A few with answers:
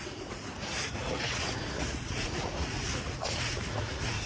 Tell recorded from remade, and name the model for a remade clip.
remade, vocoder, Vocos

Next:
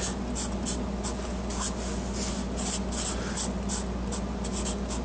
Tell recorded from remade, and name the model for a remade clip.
recorded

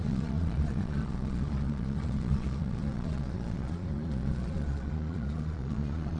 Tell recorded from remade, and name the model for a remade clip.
remade, vocoder, Vocos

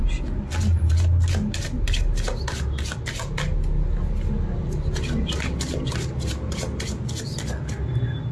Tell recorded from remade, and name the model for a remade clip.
recorded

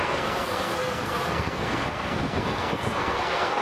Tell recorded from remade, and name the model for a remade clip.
remade, codec, SNAC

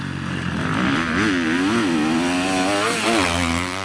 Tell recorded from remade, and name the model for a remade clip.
recorded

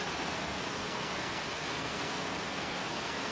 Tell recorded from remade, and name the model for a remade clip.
remade, codec, SNAC